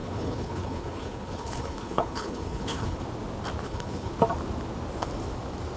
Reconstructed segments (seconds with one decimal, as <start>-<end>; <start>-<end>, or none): 0.0-3.0; 3.6-4.1